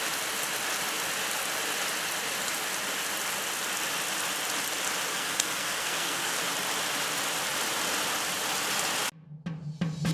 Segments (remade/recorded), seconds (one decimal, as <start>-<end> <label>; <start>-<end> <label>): 0.0-5.1 recorded; 5.1-6.4 remade; 6.4-10.1 recorded